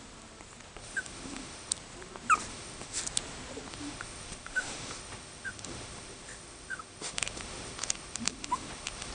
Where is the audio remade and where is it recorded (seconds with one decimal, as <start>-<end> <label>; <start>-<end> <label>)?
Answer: 0.0-0.8 recorded; 0.8-1.7 remade; 1.7-2.5 recorded; 2.5-3.0 remade; 3.0-3.7 recorded; 3.7-9.1 remade